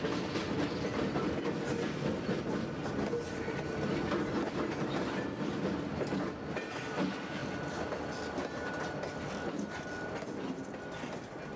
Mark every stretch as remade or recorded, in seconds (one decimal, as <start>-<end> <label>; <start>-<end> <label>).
0.0-11.6 recorded